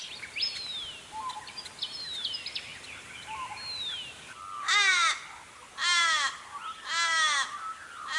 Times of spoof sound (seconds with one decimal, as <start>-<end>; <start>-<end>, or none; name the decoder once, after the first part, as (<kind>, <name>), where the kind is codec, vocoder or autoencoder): none

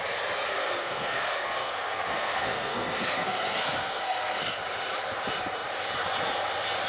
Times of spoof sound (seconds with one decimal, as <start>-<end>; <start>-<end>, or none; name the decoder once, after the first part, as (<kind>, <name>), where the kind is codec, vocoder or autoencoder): 0.5-4.6 (codec, SNAC)